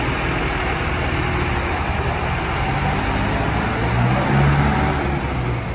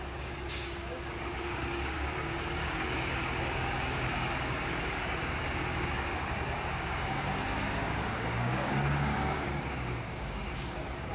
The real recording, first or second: first